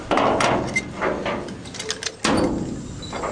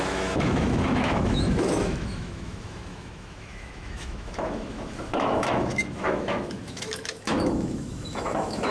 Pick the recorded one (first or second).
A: first